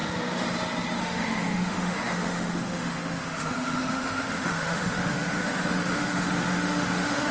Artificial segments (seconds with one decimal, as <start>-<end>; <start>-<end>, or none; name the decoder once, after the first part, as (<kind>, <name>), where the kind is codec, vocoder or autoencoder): 1.0-7.3 (autoencoder, DAC-VAE)